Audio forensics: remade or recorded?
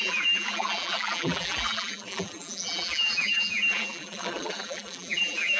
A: remade